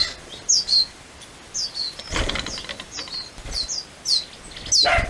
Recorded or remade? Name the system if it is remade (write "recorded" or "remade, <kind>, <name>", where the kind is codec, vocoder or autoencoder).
recorded